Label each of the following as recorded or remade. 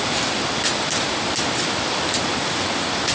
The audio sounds recorded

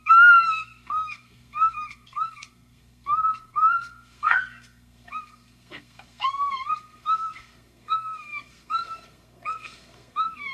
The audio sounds remade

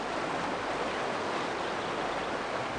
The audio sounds recorded